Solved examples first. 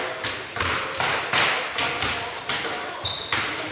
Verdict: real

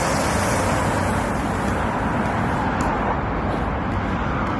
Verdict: real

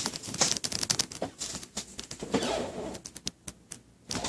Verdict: real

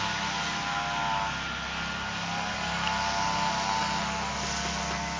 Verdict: real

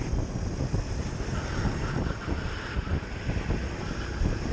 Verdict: real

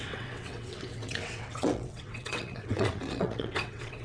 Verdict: fake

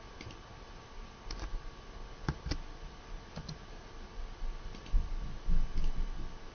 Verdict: real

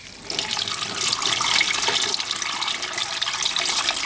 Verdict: real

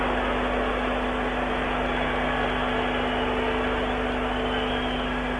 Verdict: real